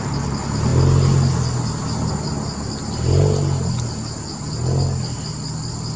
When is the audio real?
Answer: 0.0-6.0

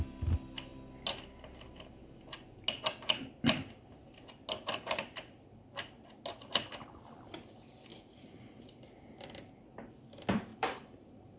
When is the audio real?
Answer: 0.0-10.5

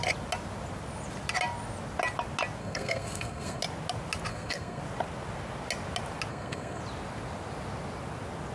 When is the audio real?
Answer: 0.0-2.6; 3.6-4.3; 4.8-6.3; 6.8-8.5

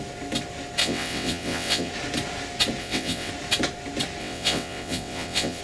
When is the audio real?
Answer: 0.0-0.8; 1.9-2.8; 3.3-4.2

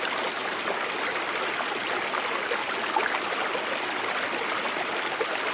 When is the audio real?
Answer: 0.0-5.5

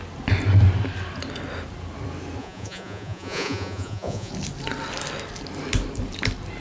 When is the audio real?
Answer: 0.0-2.4; 4.3-6.6